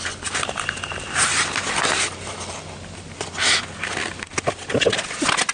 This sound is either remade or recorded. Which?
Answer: recorded